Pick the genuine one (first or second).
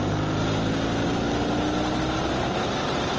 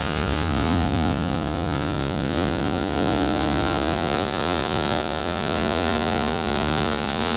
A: first